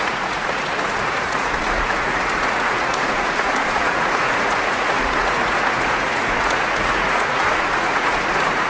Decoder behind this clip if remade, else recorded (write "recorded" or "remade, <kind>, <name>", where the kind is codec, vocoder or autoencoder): remade, vocoder, Vocos